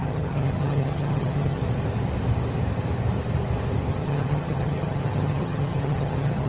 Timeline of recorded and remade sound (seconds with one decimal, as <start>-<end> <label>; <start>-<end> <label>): 0.0-1.6 remade; 1.6-3.9 recorded; 3.9-6.5 remade